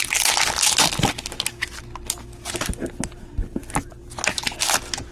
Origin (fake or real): real